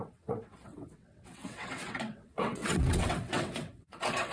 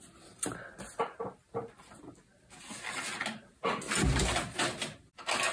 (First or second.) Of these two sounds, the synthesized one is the first